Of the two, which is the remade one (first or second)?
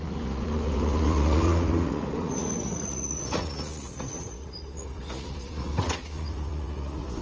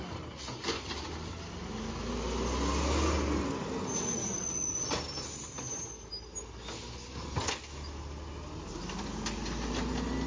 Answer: first